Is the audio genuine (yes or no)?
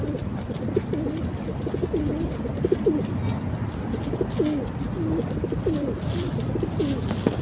yes